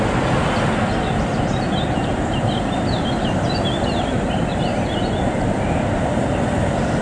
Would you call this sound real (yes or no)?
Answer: yes